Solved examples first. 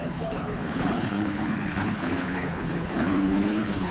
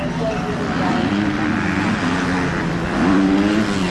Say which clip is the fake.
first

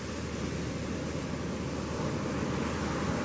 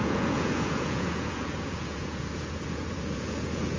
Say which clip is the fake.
second